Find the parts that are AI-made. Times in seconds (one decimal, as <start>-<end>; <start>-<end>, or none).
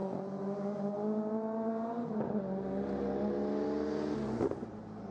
none